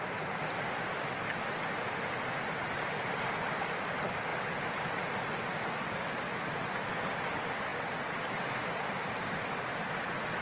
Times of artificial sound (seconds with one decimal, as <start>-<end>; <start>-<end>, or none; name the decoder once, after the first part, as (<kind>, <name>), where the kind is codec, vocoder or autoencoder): none